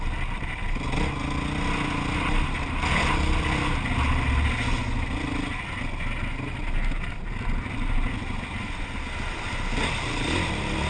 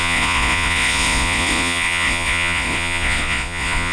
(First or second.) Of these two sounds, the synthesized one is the second